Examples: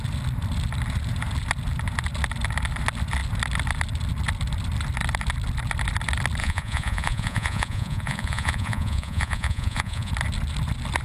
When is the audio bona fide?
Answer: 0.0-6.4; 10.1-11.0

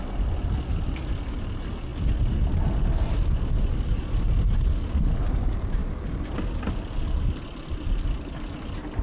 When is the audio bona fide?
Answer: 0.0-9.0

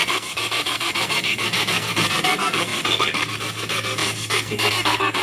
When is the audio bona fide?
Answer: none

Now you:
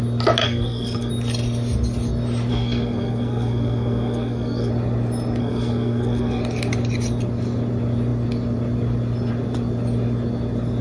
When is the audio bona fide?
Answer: 0.0-0.4; 1.1-2.5; 4.7-5.4; 6.4-10.8

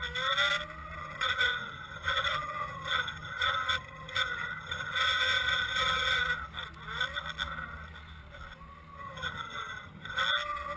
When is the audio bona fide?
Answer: 0.0-1.0; 6.2-9.0; 10.2-10.8